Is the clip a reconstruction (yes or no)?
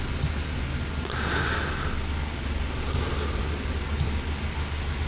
no